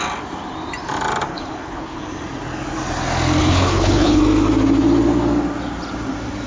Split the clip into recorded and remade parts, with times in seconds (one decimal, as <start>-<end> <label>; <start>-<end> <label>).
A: 0.0-1.3 recorded; 1.3-2.0 remade; 2.0-3.4 recorded; 3.4-4.2 remade; 4.2-6.5 recorded